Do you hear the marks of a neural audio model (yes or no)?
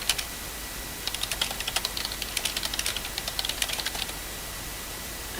yes